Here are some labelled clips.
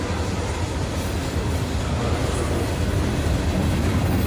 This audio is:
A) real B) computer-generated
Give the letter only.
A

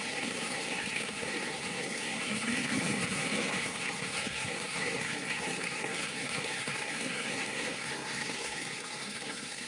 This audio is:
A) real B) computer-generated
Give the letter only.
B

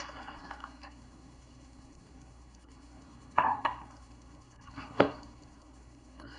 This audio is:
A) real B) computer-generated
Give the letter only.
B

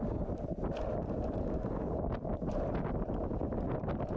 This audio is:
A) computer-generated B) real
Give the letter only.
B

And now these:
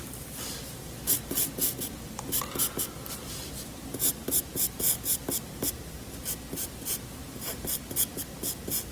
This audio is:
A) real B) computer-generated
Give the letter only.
A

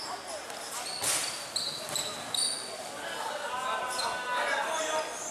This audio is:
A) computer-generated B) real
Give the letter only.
B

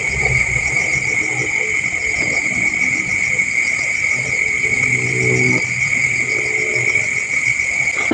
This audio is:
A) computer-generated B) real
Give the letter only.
B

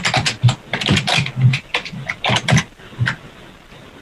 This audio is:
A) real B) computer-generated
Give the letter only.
A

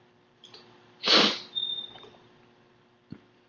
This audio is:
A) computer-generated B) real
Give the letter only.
B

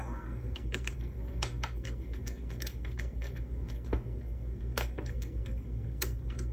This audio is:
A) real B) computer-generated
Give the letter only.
B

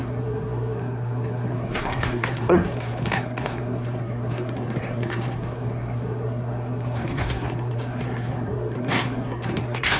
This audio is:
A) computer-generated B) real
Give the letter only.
A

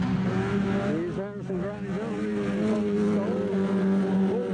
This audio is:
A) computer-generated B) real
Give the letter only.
B